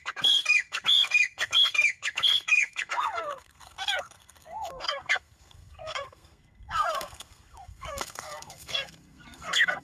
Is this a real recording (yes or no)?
no